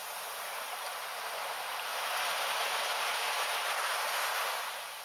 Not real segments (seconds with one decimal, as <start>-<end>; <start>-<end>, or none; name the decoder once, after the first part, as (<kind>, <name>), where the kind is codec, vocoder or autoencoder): 0.0-0.8 (vocoder, BigVGAN v2); 1.9-5.0